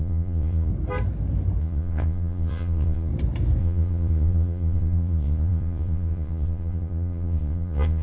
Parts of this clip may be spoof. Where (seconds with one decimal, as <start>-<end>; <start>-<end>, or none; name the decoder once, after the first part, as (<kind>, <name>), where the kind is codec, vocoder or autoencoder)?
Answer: 0.0-0.7 (vocoder, Vocos); 1.6-3.1; 3.6-8.0